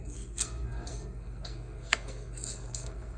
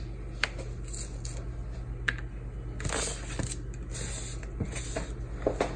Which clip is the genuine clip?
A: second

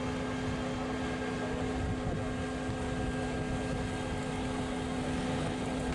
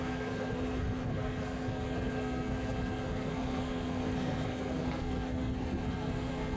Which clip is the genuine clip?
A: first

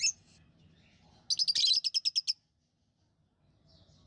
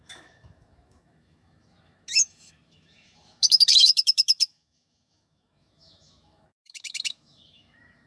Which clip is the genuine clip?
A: first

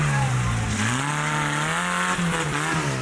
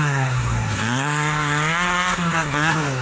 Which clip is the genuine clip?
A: first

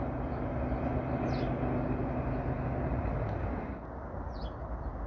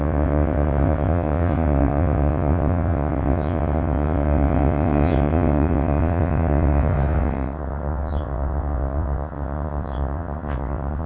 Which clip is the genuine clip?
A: first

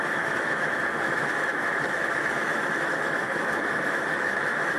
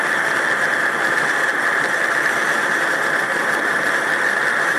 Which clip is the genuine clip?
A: second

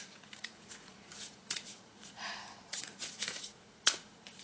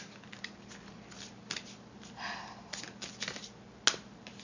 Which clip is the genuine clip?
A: second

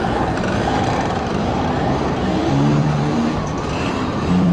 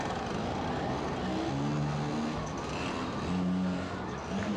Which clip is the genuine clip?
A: second